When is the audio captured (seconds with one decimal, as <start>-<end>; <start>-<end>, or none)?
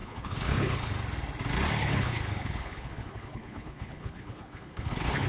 0.9-1.8